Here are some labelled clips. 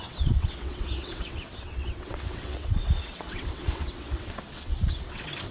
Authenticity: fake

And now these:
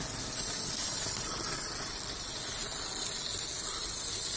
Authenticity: real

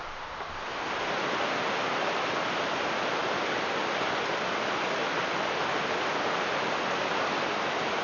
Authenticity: real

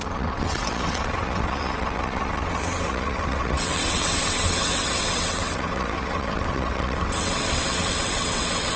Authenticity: fake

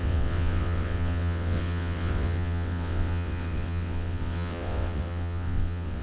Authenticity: fake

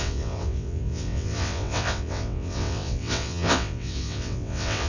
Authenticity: fake